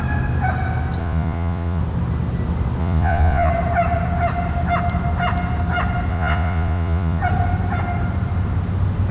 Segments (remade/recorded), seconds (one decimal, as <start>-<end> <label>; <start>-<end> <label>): 0.0-1.0 recorded; 1.0-1.8 remade; 1.8-2.8 recorded; 2.8-3.5 remade; 3.5-6.1 recorded; 6.1-7.2 remade; 7.2-9.1 recorded